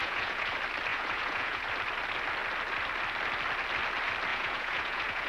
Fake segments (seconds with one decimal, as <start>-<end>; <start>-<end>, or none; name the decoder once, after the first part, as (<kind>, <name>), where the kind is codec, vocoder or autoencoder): 0.0-0.5 (vocoder, Vocos); 0.9-1.7; 4.3-5.3